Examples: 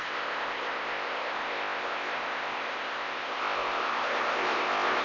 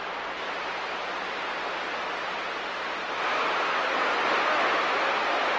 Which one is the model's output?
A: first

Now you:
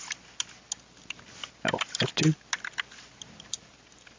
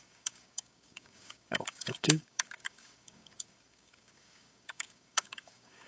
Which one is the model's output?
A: second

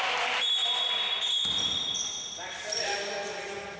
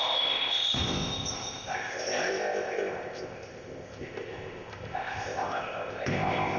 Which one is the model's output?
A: second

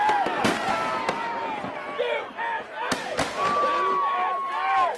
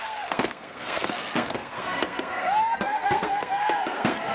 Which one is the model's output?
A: second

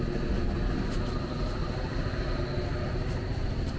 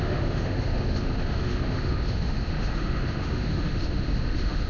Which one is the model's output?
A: second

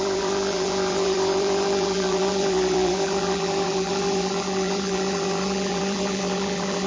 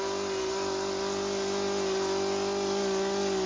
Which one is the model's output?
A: first